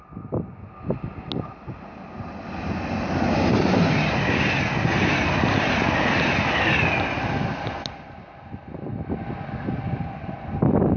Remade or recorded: recorded